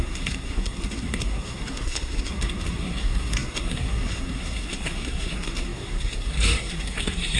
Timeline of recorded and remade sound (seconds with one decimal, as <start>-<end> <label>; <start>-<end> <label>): 0.0-7.4 remade